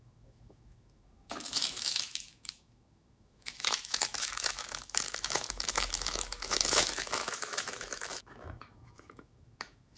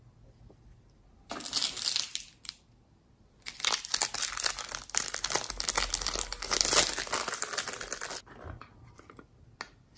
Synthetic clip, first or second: first